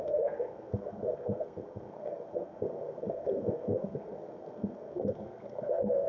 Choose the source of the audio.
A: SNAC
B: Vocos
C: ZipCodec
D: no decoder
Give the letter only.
A